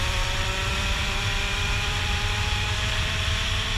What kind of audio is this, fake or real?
fake